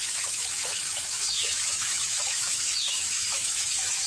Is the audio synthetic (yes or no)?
yes